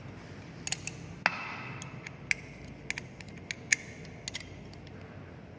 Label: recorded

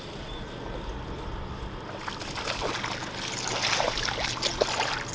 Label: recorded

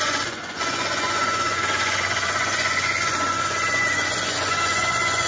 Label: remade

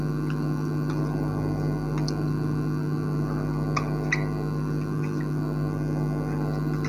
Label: recorded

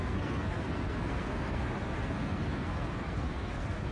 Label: remade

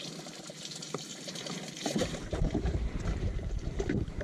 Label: remade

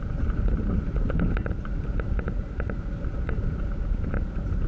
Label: recorded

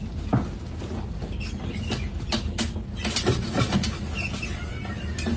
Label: recorded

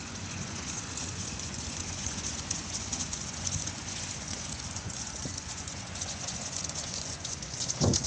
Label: remade